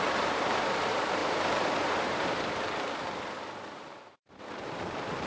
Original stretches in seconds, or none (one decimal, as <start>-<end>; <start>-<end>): none